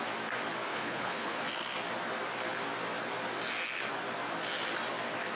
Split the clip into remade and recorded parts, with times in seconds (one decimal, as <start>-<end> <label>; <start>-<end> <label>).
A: 0.0-0.7 recorded; 0.7-1.4 remade; 1.4-5.3 recorded